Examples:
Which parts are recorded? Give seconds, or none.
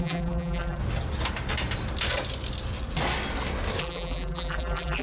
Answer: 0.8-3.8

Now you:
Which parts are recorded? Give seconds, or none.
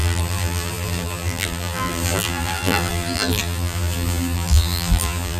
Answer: none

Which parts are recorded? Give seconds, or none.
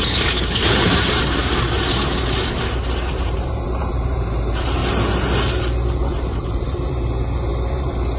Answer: 1.4-3.1; 4.8-6.3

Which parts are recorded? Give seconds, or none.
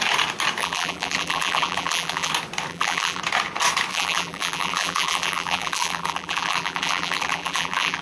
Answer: 0.0-0.6; 2.3-2.7; 3.2-3.9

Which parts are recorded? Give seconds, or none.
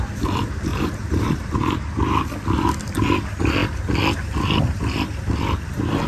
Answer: 0.0-0.7; 1.5-6.1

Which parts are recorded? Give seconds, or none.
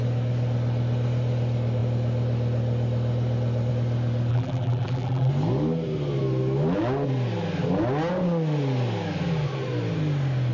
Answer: 0.0-4.3; 5.3-10.5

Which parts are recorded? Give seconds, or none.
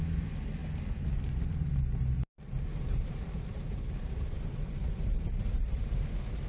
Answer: 0.0-2.7; 6.1-6.5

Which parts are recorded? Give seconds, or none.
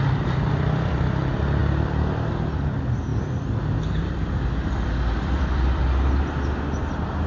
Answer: 1.6-2.3